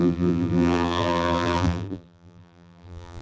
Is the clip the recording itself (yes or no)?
no